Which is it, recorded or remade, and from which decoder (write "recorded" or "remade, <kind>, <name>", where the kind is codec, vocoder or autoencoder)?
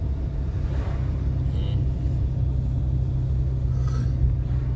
recorded